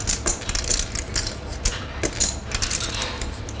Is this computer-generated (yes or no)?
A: no